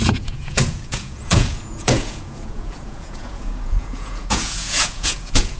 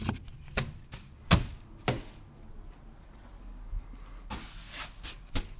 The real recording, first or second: second